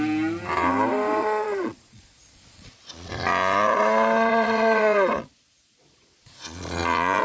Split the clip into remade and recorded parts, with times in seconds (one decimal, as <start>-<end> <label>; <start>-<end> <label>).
0.0-1.2 recorded; 1.2-3.1 remade; 3.1-4.3 recorded; 4.3-7.2 remade